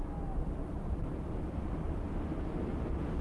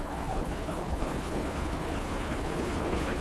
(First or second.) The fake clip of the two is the second